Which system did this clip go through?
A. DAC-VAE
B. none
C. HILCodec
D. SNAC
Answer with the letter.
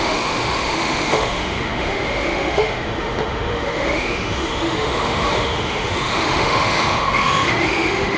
A